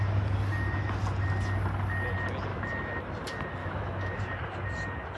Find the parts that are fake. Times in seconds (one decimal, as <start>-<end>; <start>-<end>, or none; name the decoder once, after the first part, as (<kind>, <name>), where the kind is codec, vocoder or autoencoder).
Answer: 2.5-3.0 (autoencoder, DAC-VAE); 3.6-4.2